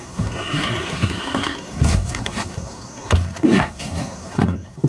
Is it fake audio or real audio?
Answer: fake